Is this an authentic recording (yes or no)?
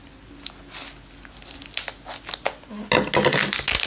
yes